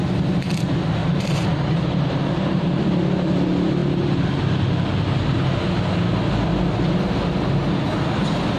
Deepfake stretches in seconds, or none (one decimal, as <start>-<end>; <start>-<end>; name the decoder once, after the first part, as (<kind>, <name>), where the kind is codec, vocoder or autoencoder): 1.0-2.9 (vocoder, BigVGAN v2)